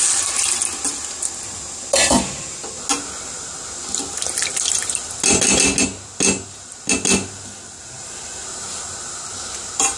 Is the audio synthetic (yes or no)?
no